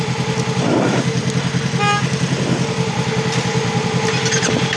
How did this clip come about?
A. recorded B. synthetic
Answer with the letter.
A